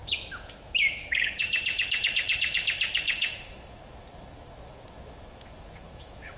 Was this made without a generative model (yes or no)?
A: no